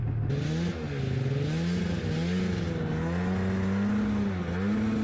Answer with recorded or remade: recorded